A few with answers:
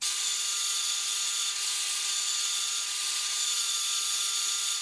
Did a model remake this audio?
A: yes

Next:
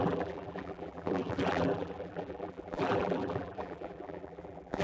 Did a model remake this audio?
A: yes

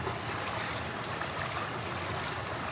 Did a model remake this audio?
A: no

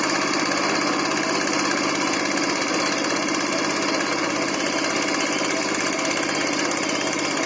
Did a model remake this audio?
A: no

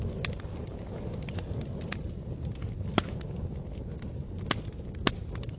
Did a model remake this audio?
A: no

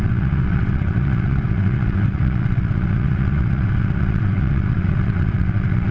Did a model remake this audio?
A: yes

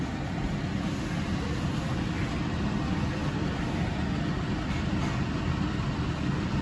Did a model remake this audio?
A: no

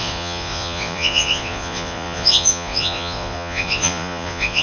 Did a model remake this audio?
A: yes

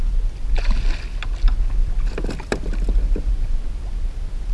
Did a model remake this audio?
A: no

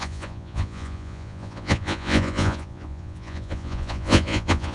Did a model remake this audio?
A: yes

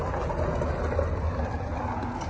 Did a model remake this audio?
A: no